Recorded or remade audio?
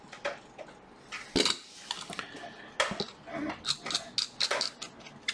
recorded